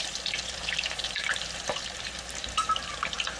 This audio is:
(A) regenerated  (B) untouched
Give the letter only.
A